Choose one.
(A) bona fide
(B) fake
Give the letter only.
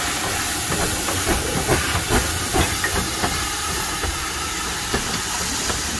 A